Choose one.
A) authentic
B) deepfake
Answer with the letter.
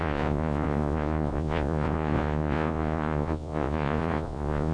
B